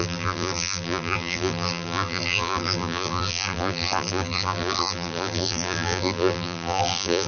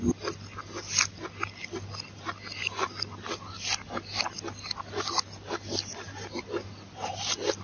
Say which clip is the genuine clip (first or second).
second